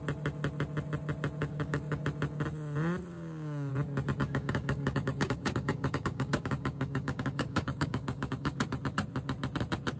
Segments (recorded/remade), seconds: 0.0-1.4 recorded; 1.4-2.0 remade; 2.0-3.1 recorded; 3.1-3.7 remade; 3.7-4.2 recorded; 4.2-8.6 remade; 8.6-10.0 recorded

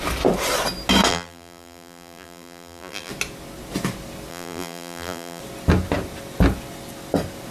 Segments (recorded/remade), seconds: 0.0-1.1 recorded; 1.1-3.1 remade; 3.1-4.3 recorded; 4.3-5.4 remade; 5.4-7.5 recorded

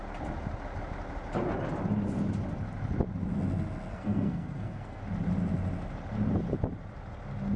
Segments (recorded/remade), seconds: 0.0-3.9 recorded; 3.9-5.0 remade; 5.0-7.6 recorded

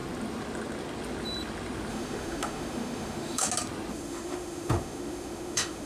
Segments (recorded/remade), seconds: 0.0-1.9 recorded; 1.9-3.5 remade; 3.5-3.9 recorded; 3.9-5.9 remade

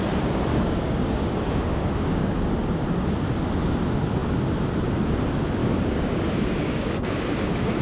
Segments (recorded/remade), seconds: 0.0-0.5 recorded; 0.5-2.4 remade; 2.4-5.6 recorded; 5.6-7.8 remade

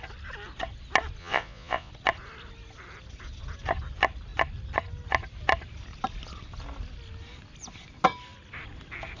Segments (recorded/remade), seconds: 0.0-1.2 recorded; 1.2-1.9 remade; 1.9-9.2 recorded

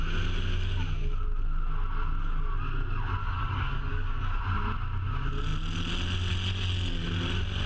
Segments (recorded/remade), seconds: 0.0-3.2 recorded; 3.2-4.4 remade; 4.4-7.7 recorded